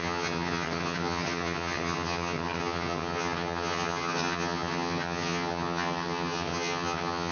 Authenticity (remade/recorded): remade